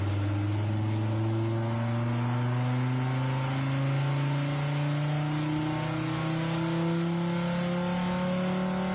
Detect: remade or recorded recorded